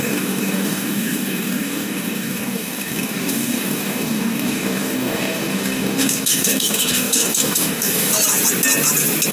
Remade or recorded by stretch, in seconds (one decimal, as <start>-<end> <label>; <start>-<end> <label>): 0.0-8.1 remade; 8.1-9.3 recorded